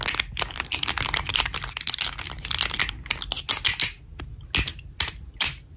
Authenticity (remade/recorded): recorded